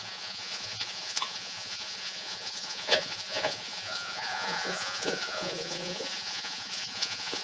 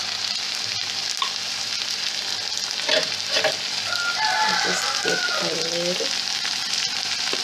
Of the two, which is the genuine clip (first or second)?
second